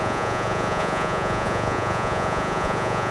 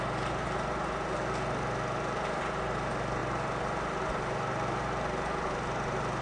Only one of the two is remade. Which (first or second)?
first